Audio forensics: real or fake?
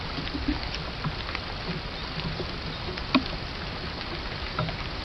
real